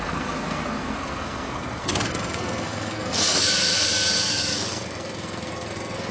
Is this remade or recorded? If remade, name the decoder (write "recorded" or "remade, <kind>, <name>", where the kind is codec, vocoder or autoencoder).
remade, codec, SNAC